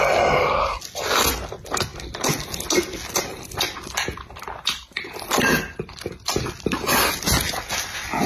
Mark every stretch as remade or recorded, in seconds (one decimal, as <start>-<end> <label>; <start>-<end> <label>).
0.0-8.3 recorded

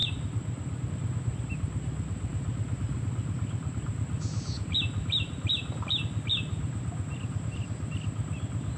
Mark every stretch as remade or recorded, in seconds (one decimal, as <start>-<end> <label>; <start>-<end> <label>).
0.0-2.3 recorded; 2.3-3.1 remade; 3.1-8.8 recorded

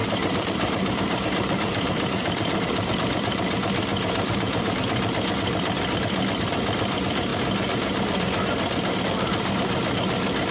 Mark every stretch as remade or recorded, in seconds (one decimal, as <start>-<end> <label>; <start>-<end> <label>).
0.0-2.9 remade; 2.9-3.9 recorded; 3.9-4.8 remade; 4.8-10.5 recorded

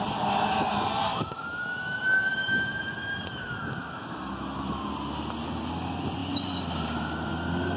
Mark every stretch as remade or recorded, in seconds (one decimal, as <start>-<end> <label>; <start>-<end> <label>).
0.0-1.1 recorded; 1.1-4.8 remade; 4.8-7.8 recorded